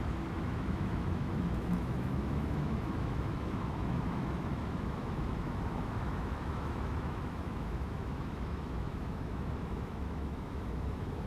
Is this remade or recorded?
remade